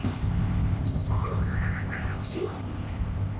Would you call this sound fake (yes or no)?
yes